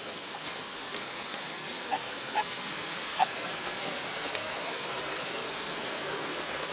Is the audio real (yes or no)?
no